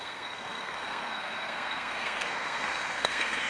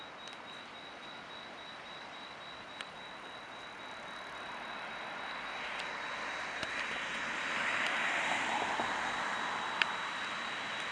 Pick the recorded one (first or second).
second